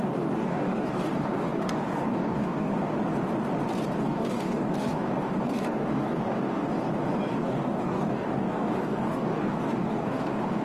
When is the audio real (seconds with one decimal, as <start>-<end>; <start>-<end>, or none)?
2.7-4.0; 6.6-7.3